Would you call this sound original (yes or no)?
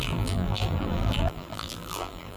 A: no